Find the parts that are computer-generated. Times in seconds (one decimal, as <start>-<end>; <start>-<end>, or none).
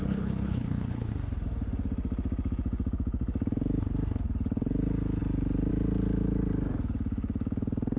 0.0-1.1